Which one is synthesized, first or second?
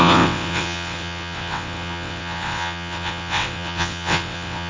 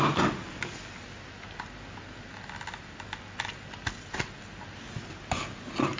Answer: first